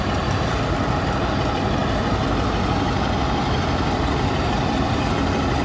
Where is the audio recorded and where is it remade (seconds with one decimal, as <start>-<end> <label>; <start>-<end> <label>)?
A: 0.0-5.6 recorded